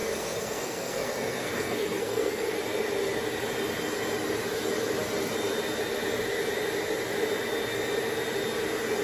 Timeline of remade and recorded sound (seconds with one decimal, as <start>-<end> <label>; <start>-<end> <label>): 0.0-2.6 remade; 2.6-9.0 recorded